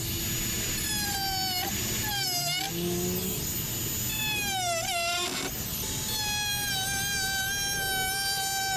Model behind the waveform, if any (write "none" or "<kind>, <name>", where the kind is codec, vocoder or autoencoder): none